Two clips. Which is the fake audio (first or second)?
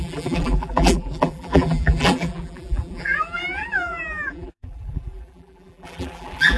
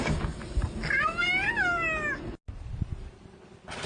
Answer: first